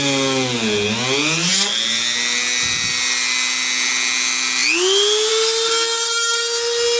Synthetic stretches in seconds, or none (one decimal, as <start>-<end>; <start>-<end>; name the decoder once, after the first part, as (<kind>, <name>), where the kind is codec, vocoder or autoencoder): none